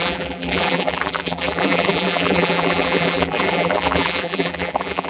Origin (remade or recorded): remade